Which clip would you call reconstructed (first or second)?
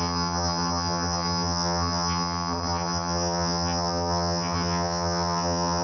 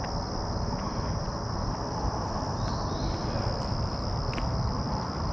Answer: first